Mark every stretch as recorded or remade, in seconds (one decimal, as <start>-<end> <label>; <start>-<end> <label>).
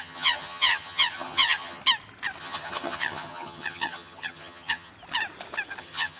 0.0-1.8 remade; 1.8-2.4 recorded; 2.4-4.9 remade; 4.9-5.8 recorded; 5.8-6.2 remade